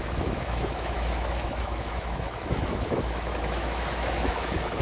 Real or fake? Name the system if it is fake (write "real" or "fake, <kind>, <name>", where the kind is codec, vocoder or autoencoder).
fake, autoencoder, DAC-VAE